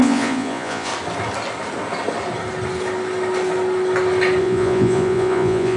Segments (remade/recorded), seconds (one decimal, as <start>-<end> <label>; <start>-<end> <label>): 0.0-0.9 remade; 0.9-4.4 recorded; 4.4-5.8 remade

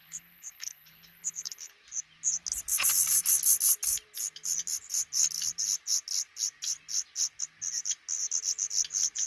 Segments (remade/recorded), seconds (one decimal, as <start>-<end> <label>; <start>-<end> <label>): 0.0-1.7 remade; 1.7-9.3 recorded

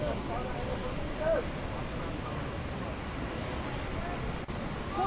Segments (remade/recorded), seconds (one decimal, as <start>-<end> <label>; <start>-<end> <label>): 0.0-5.1 recorded

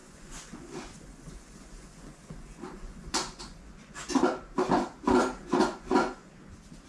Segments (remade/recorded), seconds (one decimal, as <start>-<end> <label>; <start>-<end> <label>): 0.0-4.1 remade; 4.1-5.4 recorded; 5.4-6.3 remade; 6.3-6.9 recorded

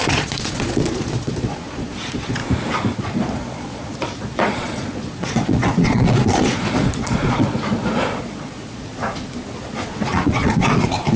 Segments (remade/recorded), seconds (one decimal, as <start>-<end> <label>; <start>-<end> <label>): 0.0-2.4 remade; 2.4-3.0 recorded; 3.0-8.9 remade; 8.9-9.6 recorded; 9.6-11.2 remade